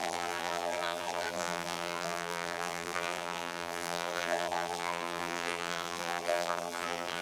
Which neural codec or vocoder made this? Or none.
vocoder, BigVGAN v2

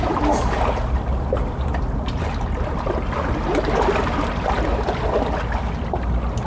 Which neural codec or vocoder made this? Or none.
none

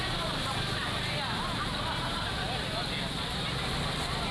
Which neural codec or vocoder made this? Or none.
none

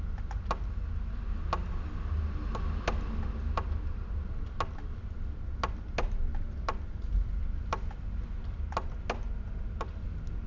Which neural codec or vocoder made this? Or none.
none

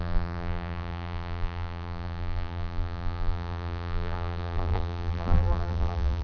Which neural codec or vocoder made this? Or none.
vocoder, BigVGAN v2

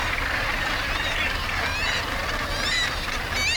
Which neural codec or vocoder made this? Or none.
none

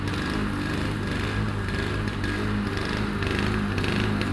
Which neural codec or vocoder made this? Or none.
none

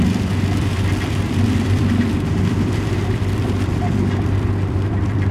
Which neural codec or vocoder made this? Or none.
vocoder, BigVGAN v2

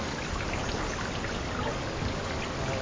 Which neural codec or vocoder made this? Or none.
none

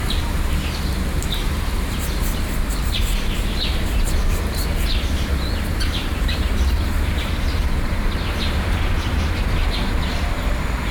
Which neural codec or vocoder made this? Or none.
vocoder, BigVGAN v2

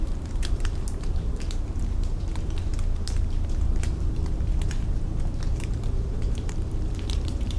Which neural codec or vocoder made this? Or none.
vocoder, BigVGAN v2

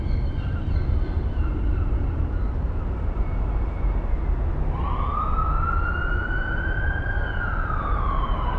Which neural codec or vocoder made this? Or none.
none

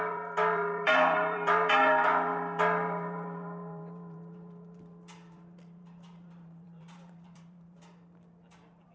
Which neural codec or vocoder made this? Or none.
vocoder, BigVGAN v2